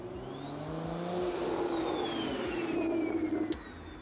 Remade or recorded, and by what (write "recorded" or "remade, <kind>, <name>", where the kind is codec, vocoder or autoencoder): recorded